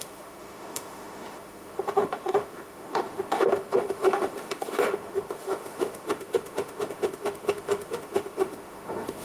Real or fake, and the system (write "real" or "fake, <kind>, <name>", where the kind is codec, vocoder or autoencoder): fake, autoencoder, DAC-VAE